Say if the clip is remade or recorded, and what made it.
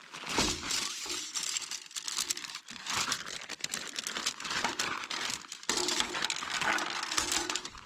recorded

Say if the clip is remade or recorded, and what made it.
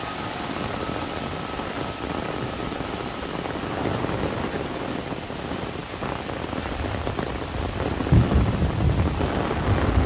recorded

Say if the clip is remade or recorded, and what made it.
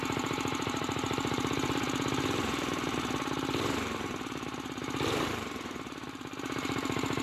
remade, vocoder, BigVGAN v2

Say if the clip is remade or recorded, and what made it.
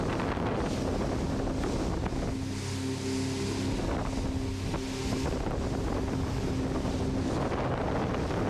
recorded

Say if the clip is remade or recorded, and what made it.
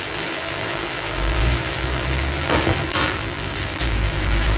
remade, vocoder, BigVGAN v2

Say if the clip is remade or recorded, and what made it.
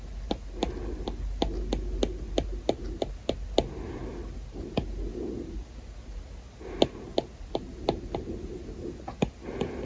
recorded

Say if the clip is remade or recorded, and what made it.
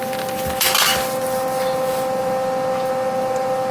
recorded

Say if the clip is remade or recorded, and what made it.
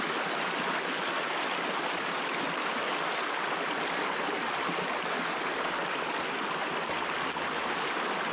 recorded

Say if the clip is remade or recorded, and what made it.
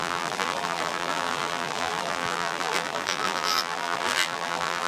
remade, vocoder, BigVGAN v2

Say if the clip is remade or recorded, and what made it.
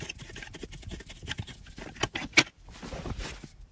recorded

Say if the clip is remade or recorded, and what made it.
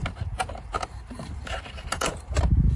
remade, vocoder, BigVGAN v2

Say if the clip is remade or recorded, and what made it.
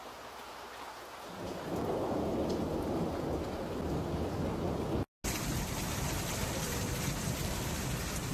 recorded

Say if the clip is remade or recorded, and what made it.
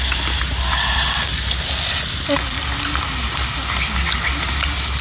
recorded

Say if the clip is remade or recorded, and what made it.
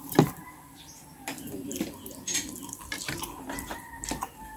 remade, vocoder, BigVGAN v2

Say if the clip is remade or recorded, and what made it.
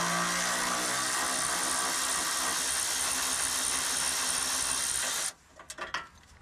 recorded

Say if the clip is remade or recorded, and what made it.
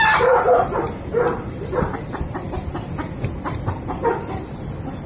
remade, vocoder, BigVGAN v2